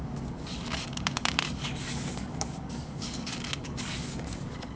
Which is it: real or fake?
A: fake